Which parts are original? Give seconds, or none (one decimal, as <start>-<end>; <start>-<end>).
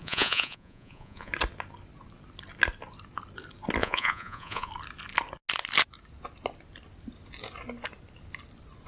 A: 1.3-3.8; 4.7-8.9